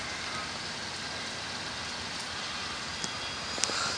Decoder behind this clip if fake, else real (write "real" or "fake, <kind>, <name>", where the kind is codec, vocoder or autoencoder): real